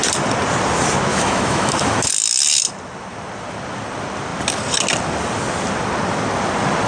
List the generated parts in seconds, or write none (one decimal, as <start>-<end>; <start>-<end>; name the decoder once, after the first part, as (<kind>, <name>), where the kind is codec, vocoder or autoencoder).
1.1-2.1 (autoencoder, DAC-VAE)